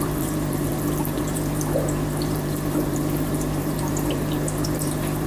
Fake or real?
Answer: fake